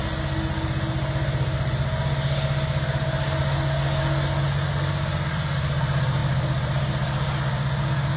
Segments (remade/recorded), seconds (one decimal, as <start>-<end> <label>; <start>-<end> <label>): 0.0-8.2 recorded